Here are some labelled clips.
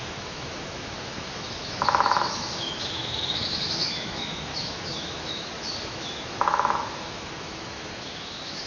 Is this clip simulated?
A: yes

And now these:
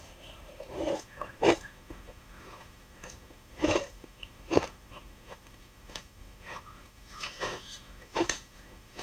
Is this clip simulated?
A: yes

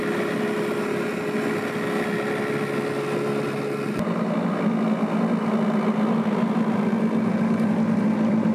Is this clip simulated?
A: no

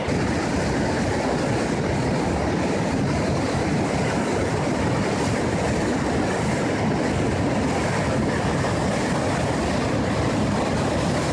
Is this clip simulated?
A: no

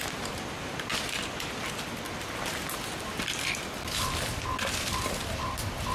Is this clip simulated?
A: no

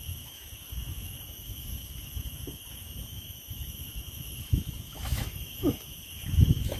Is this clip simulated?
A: yes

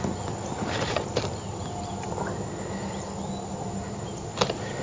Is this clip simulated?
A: no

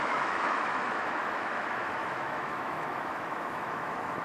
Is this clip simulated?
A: yes